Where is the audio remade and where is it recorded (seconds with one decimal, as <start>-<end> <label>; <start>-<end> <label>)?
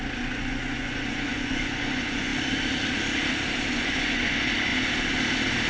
0.0-2.3 remade; 2.3-3.7 recorded; 3.7-4.7 remade; 4.7-5.7 recorded